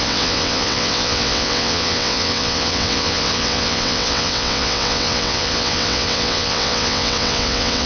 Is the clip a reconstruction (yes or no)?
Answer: yes